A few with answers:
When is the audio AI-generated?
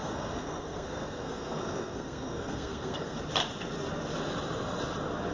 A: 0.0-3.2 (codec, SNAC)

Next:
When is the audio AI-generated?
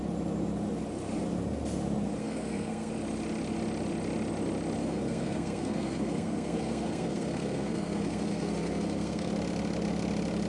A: 2.2-2.9 (codec, SNAC); 4.8-9.3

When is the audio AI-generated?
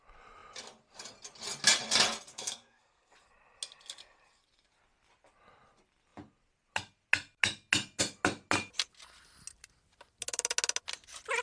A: 2.3-3.1 (codec, SNAC)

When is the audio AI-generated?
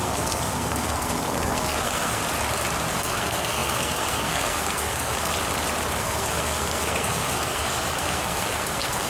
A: 0.0-2.2 (codec, SNAC); 2.9-5.3; 5.9-9.1